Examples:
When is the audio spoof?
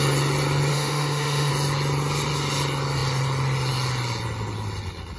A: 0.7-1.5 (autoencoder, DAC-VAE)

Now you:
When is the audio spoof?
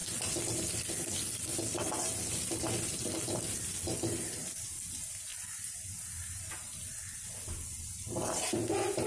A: none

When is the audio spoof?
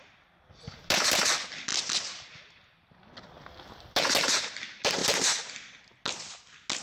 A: none